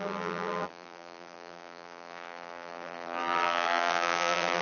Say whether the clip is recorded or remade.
remade